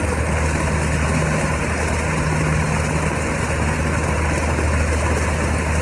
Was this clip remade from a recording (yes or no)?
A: no